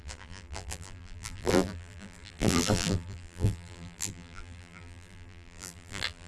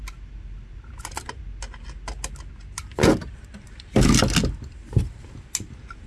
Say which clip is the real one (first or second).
second